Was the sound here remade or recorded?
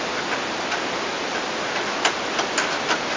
recorded